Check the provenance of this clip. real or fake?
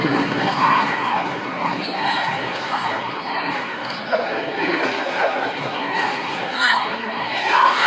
fake